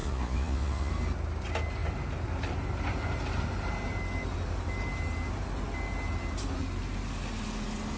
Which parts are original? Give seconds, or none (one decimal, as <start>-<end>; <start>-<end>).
0.9-8.0